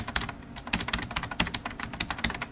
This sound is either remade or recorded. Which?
recorded